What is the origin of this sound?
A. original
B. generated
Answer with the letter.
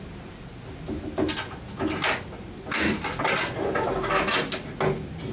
A